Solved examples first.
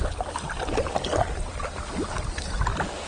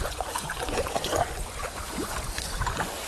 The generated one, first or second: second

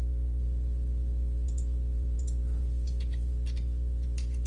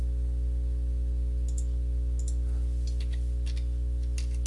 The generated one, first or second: first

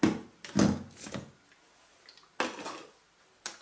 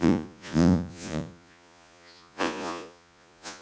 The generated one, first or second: second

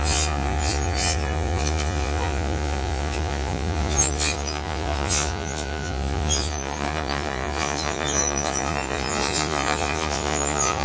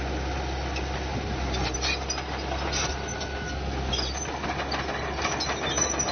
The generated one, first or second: first